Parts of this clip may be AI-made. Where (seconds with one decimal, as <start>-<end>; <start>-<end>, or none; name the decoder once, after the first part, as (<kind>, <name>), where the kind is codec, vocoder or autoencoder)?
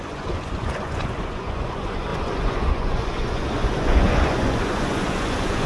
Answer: 0.0-5.7 (vocoder, Vocos)